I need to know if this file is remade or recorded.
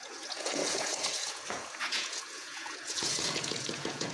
remade